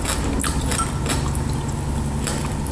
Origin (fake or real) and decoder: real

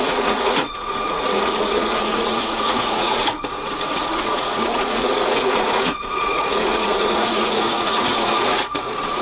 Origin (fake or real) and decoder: fake, vocoder, Vocos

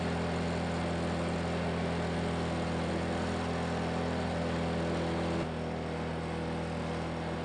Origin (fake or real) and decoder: real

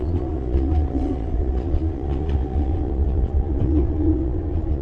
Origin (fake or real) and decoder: fake, vocoder, Vocos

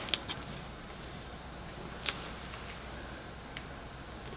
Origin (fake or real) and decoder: real